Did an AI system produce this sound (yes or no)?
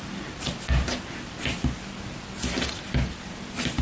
no